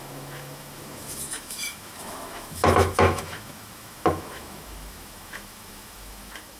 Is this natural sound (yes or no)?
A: no